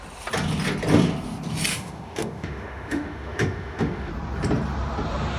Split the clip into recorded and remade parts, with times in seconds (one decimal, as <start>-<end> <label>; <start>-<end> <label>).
0.0-1.7 recorded; 1.7-4.1 remade; 4.1-5.4 recorded